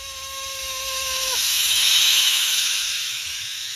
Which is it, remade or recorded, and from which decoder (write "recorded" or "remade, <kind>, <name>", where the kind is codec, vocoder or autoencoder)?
remade, autoencoder, DAC-VAE